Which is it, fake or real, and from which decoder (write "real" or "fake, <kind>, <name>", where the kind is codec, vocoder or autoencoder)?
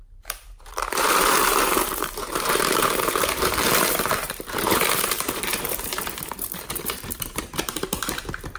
fake, vocoder, BigVGAN v2